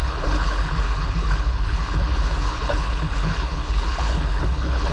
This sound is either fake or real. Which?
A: fake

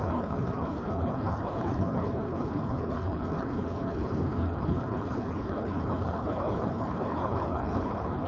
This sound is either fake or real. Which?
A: fake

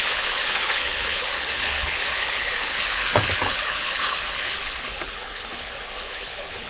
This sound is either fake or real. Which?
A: fake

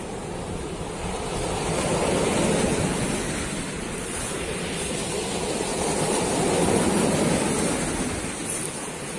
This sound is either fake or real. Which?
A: real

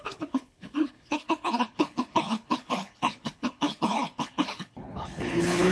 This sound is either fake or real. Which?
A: fake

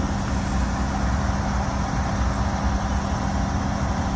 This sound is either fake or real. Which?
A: real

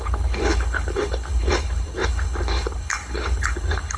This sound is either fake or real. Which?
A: fake